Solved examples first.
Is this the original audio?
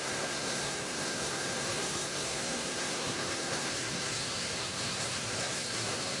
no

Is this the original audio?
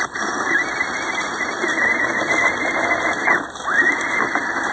yes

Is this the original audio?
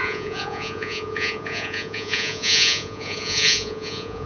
no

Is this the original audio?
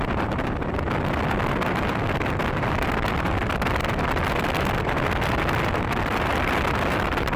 no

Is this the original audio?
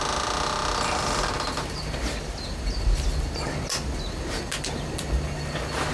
yes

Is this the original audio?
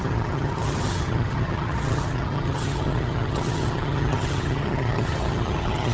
no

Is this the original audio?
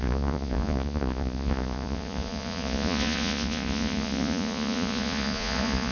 no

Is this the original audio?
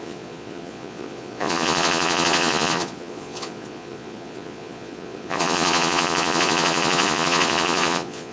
no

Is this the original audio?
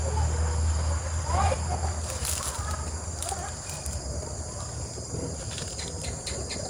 yes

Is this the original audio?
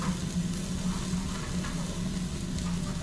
yes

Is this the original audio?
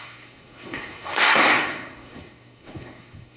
no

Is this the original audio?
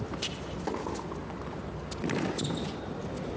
yes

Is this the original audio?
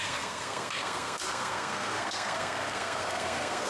no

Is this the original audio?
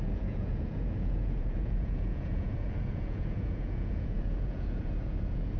no